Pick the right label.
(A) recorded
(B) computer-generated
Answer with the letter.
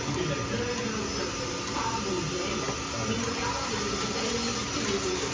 A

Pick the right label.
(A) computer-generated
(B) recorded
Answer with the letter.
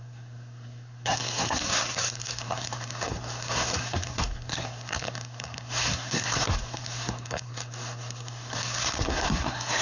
A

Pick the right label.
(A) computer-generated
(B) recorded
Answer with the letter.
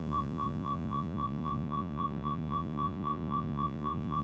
A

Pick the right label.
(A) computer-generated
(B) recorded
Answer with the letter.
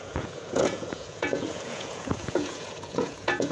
A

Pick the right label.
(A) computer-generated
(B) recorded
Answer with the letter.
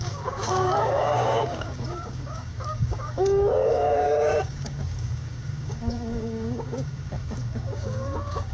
A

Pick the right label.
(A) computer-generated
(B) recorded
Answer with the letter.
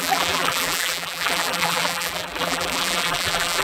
A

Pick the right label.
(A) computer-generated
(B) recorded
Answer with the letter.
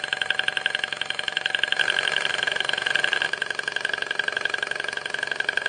B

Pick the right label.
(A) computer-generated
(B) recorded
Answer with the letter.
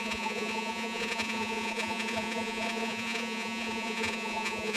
A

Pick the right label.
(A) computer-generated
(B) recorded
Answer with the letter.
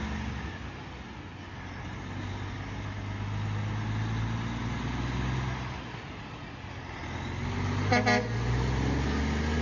B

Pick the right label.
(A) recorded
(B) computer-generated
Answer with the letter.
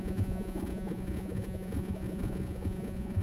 B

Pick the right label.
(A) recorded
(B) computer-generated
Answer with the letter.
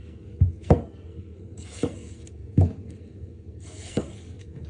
B